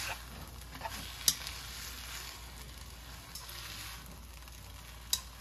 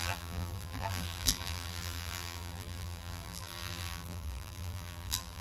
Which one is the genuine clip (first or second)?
first